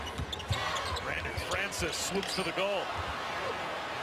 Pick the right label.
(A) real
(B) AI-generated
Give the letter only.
A